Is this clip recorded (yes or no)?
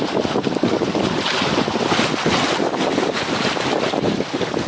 yes